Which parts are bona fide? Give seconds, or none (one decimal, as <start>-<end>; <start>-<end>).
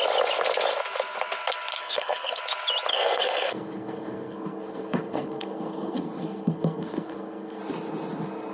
0.0-1.8; 2.4-2.9; 7.6-8.5